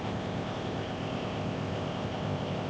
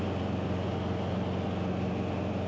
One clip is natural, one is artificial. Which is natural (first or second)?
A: second